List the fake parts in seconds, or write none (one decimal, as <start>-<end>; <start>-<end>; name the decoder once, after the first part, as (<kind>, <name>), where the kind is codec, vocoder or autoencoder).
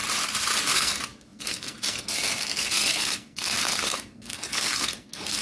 0.6-5.4 (codec, SNAC)